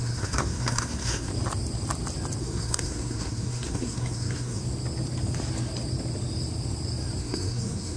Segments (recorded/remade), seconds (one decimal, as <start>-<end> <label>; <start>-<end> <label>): 0.0-1.3 remade; 1.3-2.4 recorded; 2.4-4.6 remade; 4.6-7.2 recorded; 7.2-8.0 remade